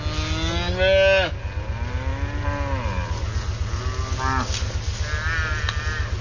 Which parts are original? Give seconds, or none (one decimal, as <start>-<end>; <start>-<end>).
0.0-6.2